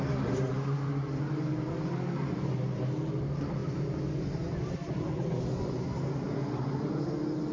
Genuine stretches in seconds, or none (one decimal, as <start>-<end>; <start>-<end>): 0.0-7.5